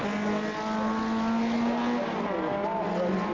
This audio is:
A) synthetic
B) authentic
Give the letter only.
B